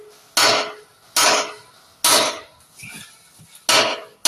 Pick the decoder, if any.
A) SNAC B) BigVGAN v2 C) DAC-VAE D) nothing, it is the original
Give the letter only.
D